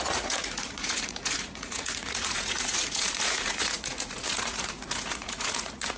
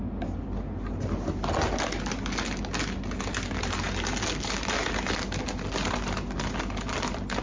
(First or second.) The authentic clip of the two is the second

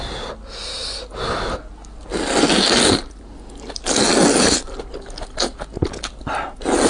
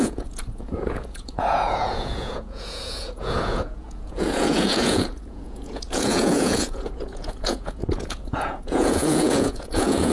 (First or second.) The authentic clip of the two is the first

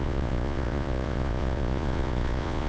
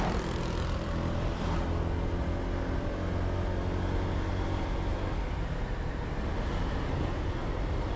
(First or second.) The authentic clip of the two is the second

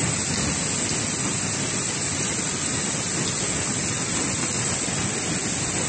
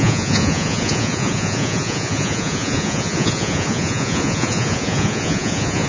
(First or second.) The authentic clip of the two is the first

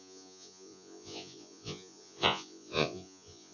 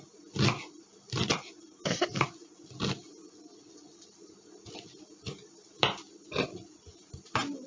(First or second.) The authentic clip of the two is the second